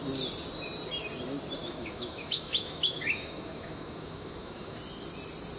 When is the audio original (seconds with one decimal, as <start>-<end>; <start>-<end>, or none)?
0.0-1.6; 4.8-5.6